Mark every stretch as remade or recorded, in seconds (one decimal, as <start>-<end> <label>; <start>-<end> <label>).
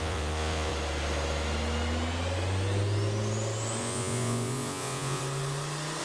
0.0-0.7 remade; 0.7-3.8 recorded; 3.8-5.2 remade; 5.2-6.0 recorded